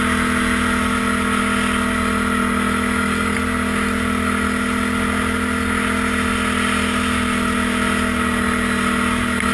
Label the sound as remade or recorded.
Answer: recorded